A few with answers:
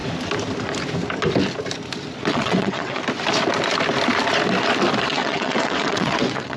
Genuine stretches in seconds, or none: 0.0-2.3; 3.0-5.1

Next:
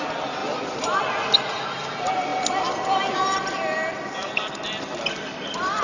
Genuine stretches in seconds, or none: 0.0-5.8